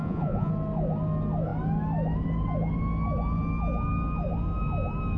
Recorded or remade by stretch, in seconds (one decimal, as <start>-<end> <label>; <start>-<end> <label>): 0.0-0.5 remade; 0.5-5.2 recorded